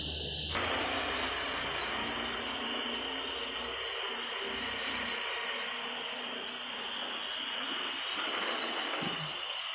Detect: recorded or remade recorded